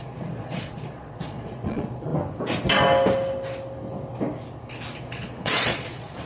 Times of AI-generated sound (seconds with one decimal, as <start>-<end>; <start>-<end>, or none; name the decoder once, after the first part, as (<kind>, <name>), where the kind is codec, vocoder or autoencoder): 0.0-2.1 (vocoder, Vocos); 5.0-6.3